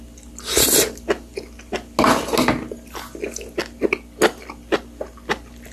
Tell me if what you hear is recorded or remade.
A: recorded